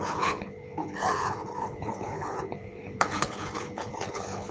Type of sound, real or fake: fake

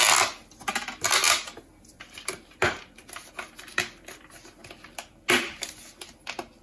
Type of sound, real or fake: real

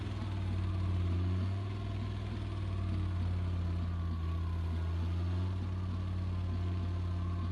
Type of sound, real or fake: real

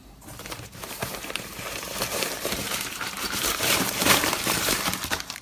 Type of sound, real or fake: fake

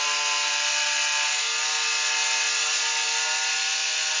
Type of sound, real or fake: real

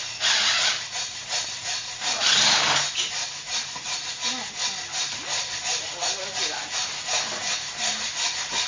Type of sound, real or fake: real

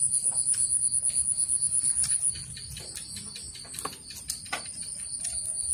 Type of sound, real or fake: real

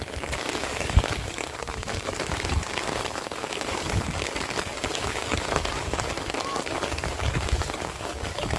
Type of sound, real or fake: fake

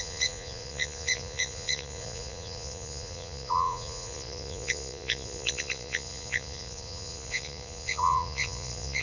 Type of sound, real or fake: fake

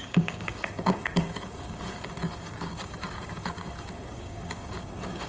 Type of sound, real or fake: fake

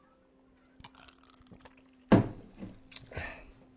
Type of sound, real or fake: real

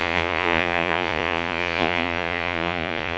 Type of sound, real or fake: fake